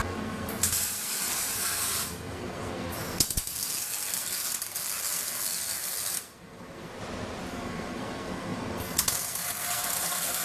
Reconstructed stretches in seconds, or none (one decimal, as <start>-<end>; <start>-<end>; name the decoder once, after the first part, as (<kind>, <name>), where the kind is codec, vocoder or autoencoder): 0.0-6.9 (codec, SNAC); 7.5-10.4